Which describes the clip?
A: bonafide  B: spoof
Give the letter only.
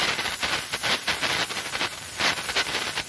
A